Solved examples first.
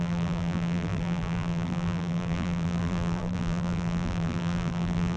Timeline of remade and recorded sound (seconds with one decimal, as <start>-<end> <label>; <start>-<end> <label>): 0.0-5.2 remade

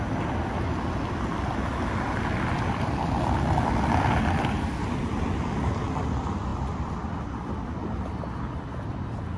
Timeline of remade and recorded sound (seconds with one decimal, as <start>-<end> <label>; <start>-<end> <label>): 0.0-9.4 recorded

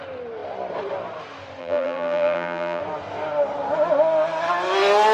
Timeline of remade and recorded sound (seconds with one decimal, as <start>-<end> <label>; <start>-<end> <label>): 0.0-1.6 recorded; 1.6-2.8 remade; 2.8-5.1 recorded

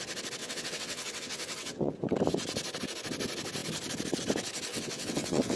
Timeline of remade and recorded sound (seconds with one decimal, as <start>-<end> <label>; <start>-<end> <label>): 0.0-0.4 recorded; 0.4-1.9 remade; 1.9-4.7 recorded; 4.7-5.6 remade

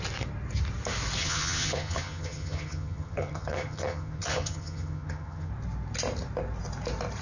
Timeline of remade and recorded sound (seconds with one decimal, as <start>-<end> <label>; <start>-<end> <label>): 0.0-1.2 recorded; 1.2-5.5 remade; 5.5-7.2 recorded

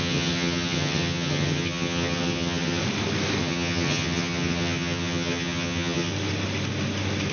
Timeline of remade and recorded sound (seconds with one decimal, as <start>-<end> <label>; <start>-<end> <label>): 0.0-2.8 remade; 2.8-3.4 recorded; 3.4-6.1 remade; 6.1-7.3 recorded